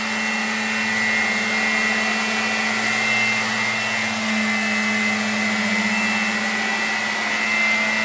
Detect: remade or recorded recorded